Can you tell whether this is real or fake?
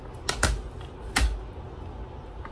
real